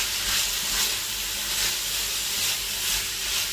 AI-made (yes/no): no